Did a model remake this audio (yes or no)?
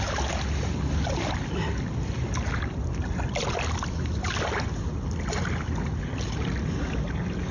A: no